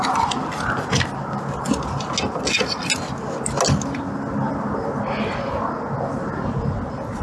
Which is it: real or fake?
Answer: real